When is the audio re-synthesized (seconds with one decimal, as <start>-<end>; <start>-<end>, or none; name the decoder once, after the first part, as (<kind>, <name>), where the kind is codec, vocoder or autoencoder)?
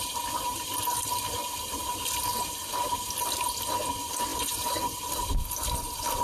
none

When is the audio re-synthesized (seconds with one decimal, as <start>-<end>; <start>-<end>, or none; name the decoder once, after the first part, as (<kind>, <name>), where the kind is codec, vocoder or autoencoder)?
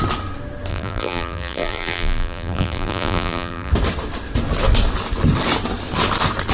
0.7-3.7 (vocoder, BigVGAN v2)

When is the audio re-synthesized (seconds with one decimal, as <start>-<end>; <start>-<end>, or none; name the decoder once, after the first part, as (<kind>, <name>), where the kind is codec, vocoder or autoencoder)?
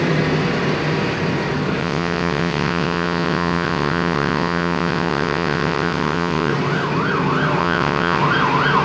1.8-6.5 (vocoder, WaveNeXt); 7.6-8.2